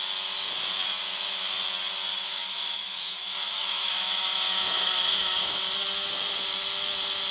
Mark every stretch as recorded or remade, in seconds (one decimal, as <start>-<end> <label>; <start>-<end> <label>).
0.0-2.1 recorded; 2.1-5.6 remade; 5.6-7.3 recorded